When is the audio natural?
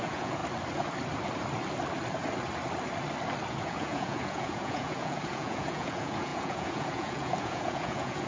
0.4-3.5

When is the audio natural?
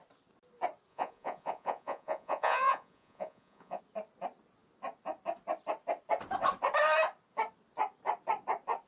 0.0-0.9; 3.8-8.9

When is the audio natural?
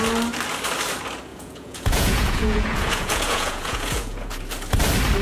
0.0-1.3; 4.4-5.2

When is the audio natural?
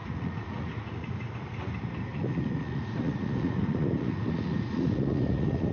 1.3-2.1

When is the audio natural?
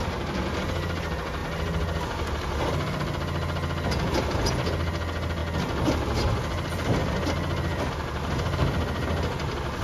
0.0-9.8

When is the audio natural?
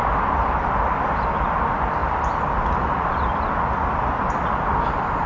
0.0-5.3